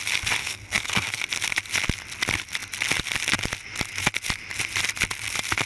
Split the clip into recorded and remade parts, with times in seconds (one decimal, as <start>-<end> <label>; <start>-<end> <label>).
0.0-0.4 recorded; 0.4-1.2 remade; 1.2-5.7 recorded